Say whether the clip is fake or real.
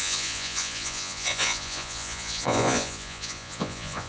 fake